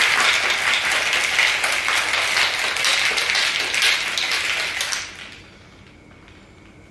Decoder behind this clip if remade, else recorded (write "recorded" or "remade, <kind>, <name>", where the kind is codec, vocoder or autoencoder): recorded